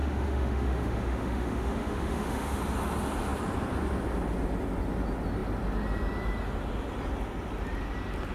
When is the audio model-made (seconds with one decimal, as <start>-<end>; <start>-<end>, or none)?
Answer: 0.0-2.6